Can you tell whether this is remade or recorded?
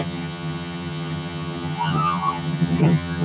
remade